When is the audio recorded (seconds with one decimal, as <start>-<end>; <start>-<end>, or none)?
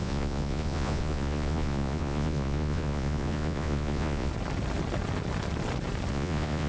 4.3-6.1